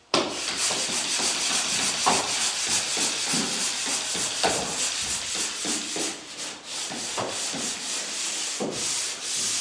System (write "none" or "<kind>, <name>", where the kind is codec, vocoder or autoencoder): none